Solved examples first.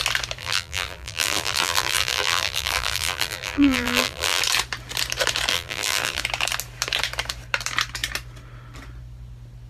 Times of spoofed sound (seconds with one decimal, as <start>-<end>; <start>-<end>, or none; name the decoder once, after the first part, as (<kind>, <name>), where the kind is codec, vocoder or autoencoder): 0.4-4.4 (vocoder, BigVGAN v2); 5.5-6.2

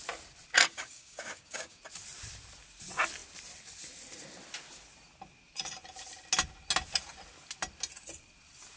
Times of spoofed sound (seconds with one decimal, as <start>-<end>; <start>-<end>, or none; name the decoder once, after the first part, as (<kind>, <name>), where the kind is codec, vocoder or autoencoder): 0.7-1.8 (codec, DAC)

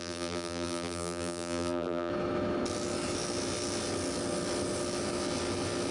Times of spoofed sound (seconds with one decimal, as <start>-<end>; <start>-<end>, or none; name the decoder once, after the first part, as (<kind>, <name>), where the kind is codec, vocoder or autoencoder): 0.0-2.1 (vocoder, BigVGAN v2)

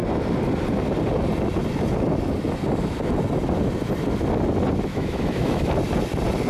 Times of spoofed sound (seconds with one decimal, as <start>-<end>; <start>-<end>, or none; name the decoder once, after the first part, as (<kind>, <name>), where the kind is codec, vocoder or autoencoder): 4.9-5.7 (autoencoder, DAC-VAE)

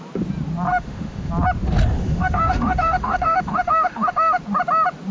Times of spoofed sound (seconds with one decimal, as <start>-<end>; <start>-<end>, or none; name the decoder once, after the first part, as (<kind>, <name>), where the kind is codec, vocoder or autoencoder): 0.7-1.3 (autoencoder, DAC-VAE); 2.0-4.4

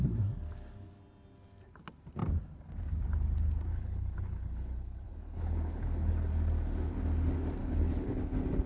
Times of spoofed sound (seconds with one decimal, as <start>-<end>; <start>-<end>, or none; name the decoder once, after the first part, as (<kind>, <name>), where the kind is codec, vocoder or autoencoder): 3.7-6.1 (codec, HILCodec); 7.6-8.2

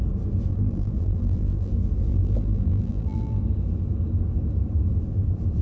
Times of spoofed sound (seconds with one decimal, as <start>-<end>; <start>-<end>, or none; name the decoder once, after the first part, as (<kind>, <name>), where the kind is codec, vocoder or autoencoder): 0.5-1.7 (vocoder, BigVGAN v2); 2.1-3.4

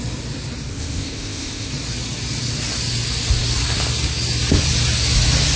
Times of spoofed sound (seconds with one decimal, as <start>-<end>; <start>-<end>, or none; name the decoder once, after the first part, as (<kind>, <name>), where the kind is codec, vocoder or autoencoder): 0.7-1.7 (codec, ZipCodec)